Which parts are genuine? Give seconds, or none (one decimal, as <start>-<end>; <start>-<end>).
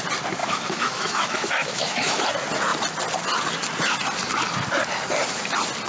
0.0-0.4; 2.2-5.9